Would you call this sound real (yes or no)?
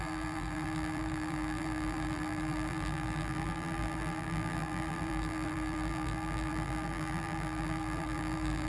no